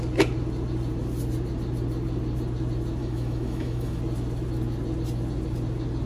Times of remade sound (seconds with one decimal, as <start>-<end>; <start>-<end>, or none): 3.0-4.0